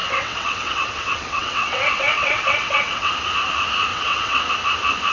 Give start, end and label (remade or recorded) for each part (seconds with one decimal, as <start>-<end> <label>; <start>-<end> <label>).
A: 0.0-3.1 remade; 3.1-3.9 recorded; 3.9-4.5 remade; 4.5-5.1 recorded